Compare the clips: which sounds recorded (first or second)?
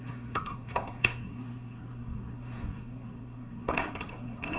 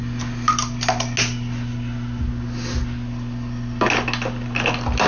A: second